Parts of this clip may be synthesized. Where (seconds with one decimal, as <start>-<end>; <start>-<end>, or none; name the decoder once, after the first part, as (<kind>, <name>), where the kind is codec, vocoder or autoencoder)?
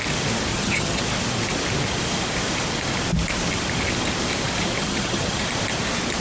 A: 0.5-1.0 (vocoder, HiFi-GAN); 4.8-5.4